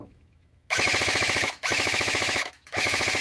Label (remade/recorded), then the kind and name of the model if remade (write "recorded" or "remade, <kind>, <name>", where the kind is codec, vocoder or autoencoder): remade, autoencoder, DAC-VAE